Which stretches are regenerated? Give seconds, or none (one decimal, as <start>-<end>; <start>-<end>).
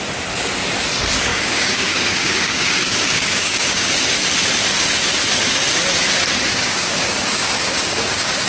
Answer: 1.3-3.9; 6.5-8.5